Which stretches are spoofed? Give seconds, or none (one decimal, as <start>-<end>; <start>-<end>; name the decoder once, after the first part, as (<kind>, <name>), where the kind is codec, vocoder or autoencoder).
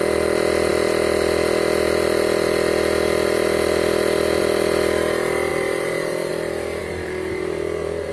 5.5-6.3 (vocoder, BigVGAN v2); 6.8-8.1